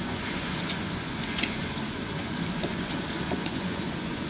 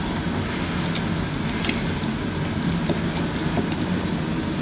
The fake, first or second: first